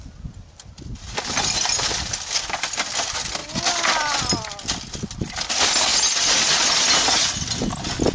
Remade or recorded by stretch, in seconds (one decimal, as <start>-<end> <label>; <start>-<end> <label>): 0.0-8.1 recorded